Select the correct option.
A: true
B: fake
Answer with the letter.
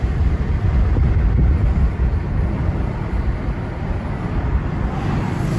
A